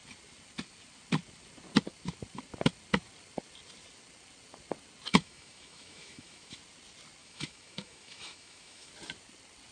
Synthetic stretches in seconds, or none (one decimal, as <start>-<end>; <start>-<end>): 5.1-6.6; 7.2-8.9